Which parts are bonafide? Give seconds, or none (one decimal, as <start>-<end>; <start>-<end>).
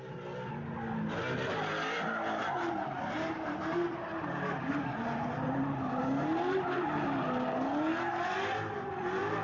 0.0-2.4; 6.0-9.4